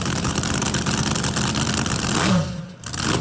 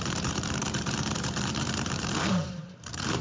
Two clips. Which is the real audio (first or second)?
first